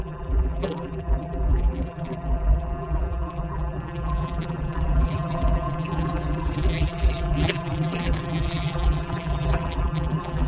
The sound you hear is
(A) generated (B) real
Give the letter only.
A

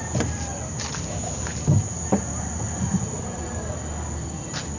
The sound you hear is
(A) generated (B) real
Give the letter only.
B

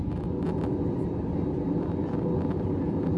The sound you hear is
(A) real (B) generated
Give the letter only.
A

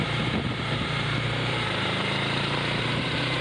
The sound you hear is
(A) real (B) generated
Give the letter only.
B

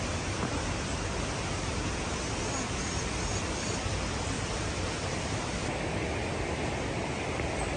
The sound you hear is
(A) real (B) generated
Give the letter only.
A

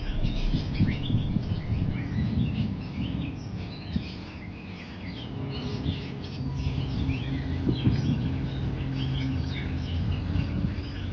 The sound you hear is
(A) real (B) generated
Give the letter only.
A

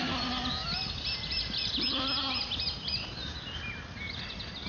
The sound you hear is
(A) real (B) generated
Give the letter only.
A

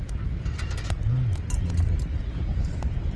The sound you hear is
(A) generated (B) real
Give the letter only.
B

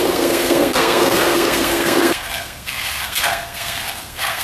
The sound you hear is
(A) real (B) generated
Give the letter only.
B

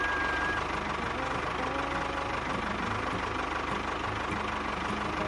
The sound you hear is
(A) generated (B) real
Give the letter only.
B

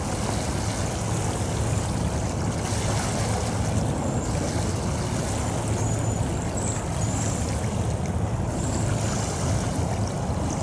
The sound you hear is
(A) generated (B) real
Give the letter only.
B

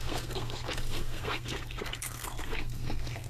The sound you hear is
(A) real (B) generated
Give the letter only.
B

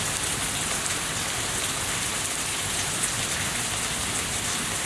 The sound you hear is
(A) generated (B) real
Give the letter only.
B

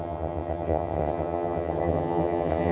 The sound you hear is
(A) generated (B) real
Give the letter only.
A